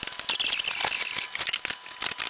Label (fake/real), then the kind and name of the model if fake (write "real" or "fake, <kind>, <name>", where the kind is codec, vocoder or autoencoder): real